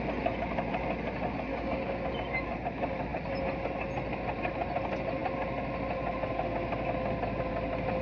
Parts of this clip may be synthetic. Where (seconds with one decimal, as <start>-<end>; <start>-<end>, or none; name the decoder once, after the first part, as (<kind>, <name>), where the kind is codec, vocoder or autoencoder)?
1.5-2.1 (codec, DAC)